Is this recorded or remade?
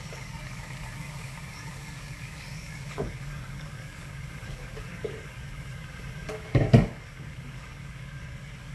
remade